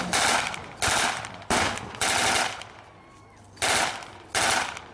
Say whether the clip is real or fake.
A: real